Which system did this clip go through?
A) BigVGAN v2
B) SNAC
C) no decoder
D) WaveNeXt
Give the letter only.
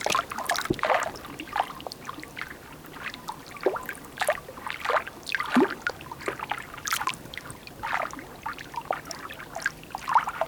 C